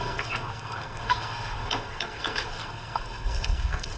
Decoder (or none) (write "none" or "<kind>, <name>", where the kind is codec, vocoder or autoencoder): codec, SNAC